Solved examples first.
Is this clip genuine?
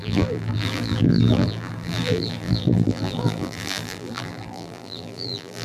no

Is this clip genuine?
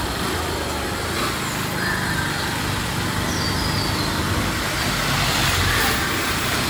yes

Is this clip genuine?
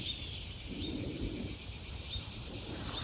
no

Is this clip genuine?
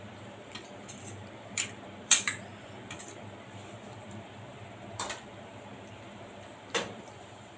no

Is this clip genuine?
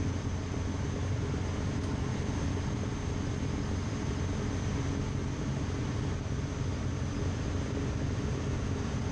yes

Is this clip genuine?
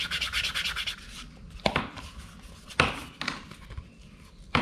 yes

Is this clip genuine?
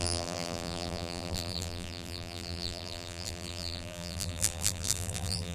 no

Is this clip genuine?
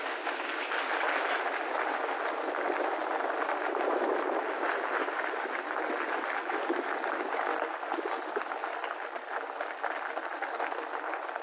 yes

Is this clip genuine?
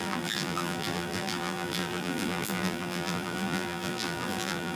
no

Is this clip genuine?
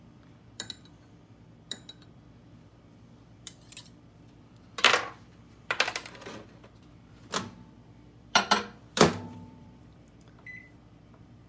no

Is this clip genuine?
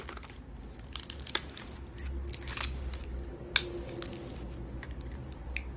yes